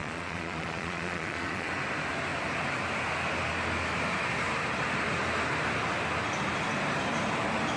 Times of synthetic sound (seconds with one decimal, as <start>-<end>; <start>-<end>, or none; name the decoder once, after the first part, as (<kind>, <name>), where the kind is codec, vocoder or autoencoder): 0.0-1.7 (vocoder, Vocos)